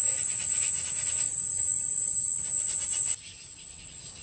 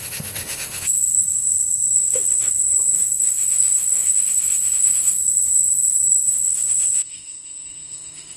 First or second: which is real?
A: first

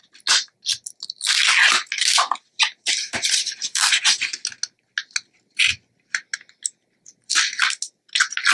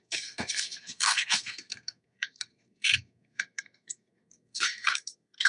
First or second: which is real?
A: first